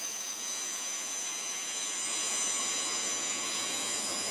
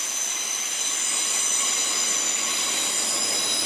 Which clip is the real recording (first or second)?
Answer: second